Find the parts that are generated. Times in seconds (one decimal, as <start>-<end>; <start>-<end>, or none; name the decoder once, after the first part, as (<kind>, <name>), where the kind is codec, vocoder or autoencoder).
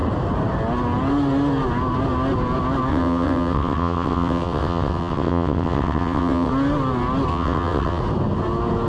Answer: 2.9-6.5 (vocoder, WaveNeXt); 7.3-8.0